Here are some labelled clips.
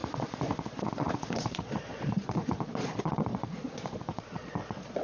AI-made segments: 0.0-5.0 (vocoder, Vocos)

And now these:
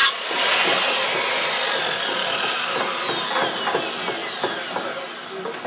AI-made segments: 0.0-0.6 (vocoder, Vocos)

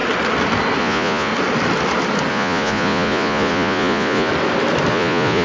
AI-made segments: 0.8-1.3 (vocoder, Vocos); 2.3-4.3; 4.9-5.4